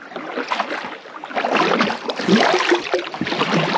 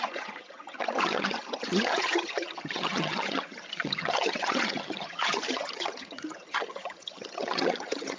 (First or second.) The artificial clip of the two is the second